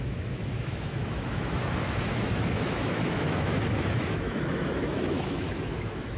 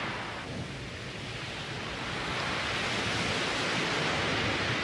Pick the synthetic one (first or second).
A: first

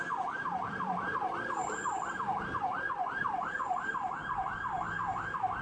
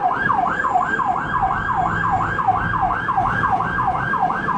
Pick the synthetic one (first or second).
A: first